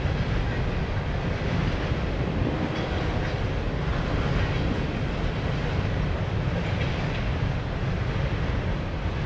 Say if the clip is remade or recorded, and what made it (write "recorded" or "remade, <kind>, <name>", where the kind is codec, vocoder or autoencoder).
recorded